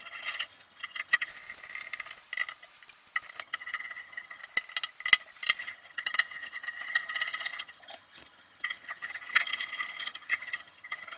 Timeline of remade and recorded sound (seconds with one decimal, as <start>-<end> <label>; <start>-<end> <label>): 0.0-1.3 remade; 1.3-3.4 recorded; 3.4-4.4 remade; 4.4-5.6 recorded; 5.6-11.2 remade